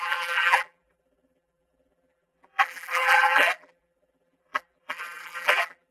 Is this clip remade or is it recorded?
remade